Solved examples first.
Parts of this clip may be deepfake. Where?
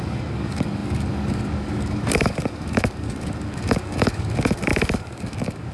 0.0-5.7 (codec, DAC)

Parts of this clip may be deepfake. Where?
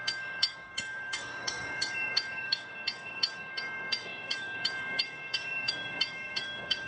0.0-6.9 (codec, DAC)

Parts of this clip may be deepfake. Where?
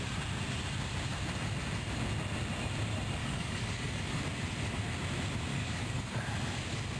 3.2-4.2 (codec, DAC); 5.5-6.2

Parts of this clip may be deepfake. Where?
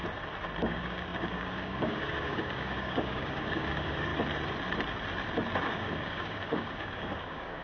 0.6-4.1 (codec, DAC); 5.6-7.6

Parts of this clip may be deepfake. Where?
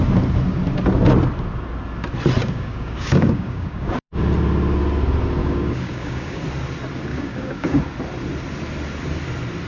2.4-4.2 (codec, DAC); 5.4-6.4; 7.1-7.8